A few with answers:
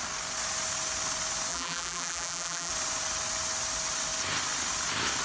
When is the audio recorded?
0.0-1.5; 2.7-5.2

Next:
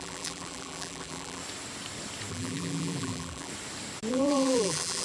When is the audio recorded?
1.4-2.3; 3.5-4.1

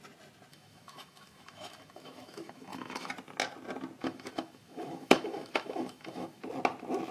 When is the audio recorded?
0.0-0.5; 3.1-4.0; 6.4-7.1

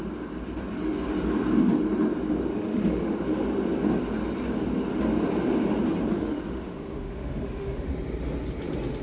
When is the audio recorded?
0.0-2.5; 3.2-6.1; 7.9-9.0

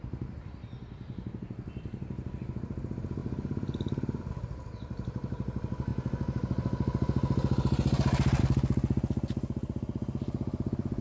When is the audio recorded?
0.0-11.0

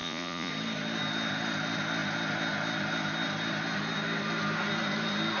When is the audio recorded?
0.5-5.4

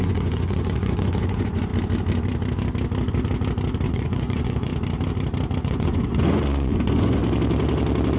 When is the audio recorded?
1.7-3.9; 4.7-5.6; 7.2-8.2